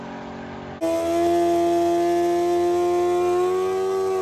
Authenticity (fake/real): real